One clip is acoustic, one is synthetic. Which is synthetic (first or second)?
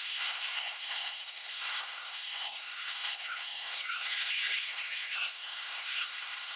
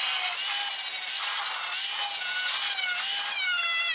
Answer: first